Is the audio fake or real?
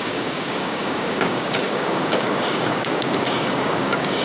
fake